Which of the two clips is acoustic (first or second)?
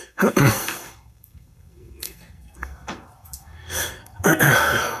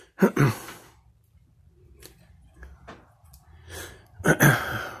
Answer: second